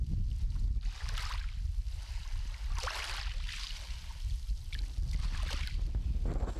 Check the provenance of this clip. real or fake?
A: real